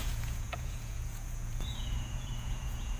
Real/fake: fake